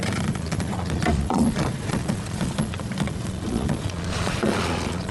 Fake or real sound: fake